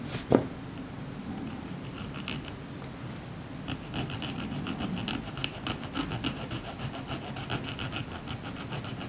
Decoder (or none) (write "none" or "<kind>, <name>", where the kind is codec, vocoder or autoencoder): none